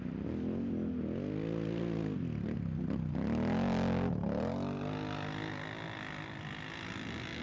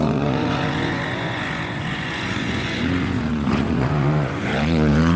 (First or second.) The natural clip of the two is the first